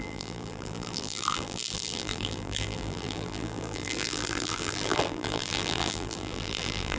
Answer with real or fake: fake